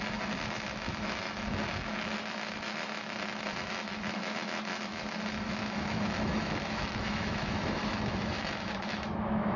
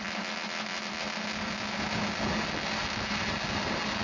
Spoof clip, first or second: first